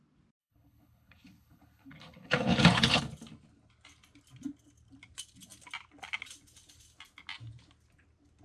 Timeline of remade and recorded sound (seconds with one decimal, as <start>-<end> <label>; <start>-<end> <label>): 0.0-0.4 recorded; 0.4-3.0 remade; 3.0-8.4 recorded